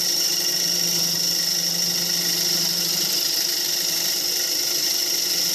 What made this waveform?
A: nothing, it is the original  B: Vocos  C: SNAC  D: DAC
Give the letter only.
A